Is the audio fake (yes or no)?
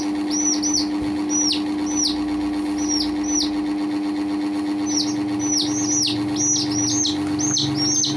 no